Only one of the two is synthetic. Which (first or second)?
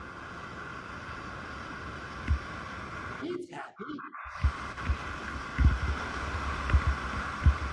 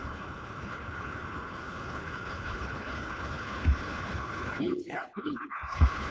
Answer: second